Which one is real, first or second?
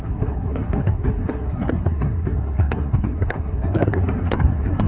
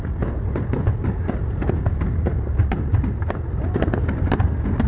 second